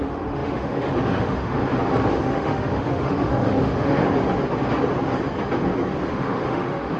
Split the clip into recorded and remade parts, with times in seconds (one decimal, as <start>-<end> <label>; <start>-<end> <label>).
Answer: 0.0-1.6 remade; 1.6-2.2 recorded; 2.2-4.0 remade; 4.0-6.1 recorded; 6.1-7.0 remade